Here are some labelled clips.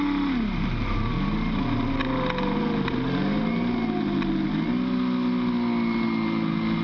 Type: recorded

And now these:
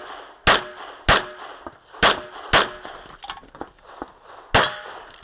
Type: recorded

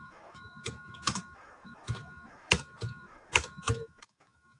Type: remade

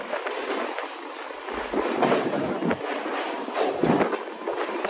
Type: recorded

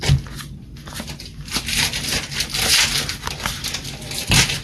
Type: recorded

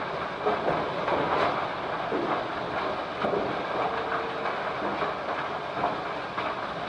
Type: recorded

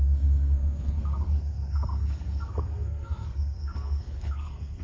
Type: remade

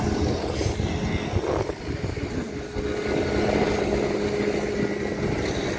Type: recorded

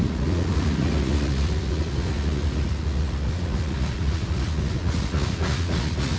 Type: remade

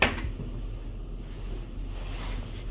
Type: recorded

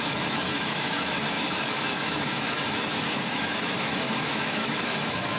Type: remade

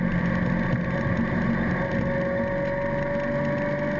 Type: recorded